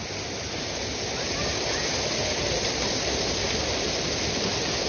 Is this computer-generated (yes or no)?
no